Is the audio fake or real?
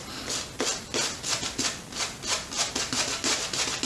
real